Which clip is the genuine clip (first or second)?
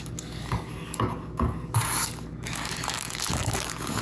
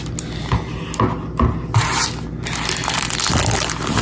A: second